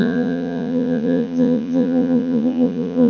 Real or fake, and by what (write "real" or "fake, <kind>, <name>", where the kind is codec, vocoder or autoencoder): fake, vocoder, Vocos